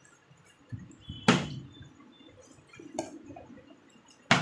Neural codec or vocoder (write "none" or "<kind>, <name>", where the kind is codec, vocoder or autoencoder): none